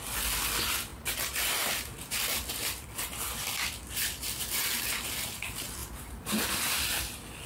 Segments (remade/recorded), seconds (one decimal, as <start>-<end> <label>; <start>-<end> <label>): 0.0-5.8 recorded; 5.8-6.8 remade; 6.8-7.5 recorded